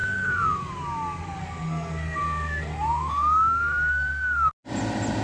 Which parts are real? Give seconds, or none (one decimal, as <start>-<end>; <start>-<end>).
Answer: 0.7-1.4; 4.5-5.2